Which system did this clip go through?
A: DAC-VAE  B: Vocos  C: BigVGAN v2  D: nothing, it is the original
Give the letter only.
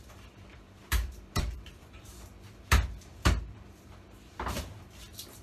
C